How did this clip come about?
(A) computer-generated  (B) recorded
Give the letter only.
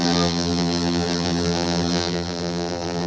A